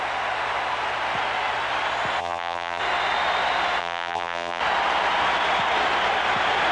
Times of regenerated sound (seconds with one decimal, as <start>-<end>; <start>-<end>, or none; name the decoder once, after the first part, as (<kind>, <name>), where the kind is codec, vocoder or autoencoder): 2.2-2.8 (vocoder, BigVGAN v2); 3.8-4.6